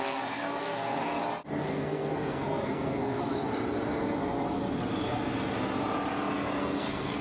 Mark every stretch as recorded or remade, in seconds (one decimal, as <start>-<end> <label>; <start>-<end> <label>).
0.0-1.2 remade; 1.2-1.7 recorded; 1.7-3.2 remade; 3.2-6.6 recorded; 6.6-7.2 remade